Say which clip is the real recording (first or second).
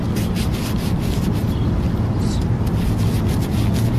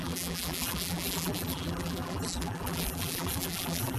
first